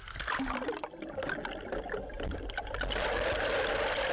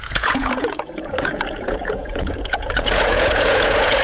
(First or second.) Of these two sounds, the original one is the first